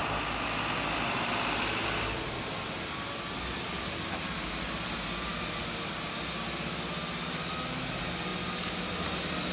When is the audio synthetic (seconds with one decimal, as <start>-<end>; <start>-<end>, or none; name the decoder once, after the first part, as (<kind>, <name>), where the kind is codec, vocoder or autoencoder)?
none